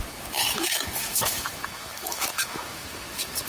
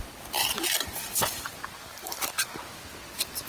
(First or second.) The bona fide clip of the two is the second